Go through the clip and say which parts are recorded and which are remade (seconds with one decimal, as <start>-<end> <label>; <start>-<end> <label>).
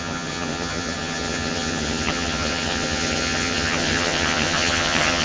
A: 0.0-5.2 remade